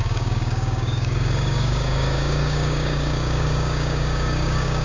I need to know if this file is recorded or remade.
remade